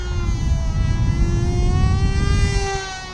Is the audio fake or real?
real